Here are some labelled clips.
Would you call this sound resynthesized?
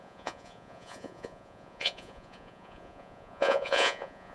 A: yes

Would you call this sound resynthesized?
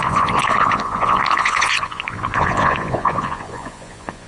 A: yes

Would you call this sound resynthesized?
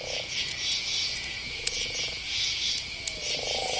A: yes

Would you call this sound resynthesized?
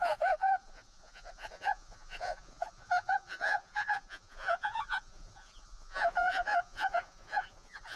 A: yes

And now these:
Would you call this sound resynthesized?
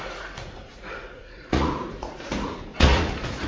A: yes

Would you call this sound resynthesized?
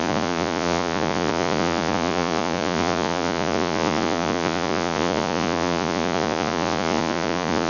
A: yes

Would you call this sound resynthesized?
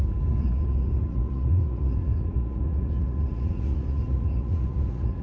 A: yes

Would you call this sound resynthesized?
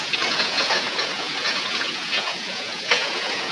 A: yes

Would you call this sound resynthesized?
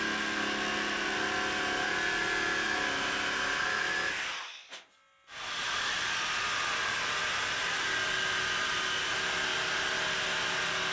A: no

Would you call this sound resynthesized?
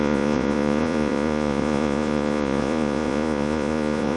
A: yes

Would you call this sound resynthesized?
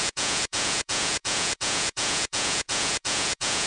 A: yes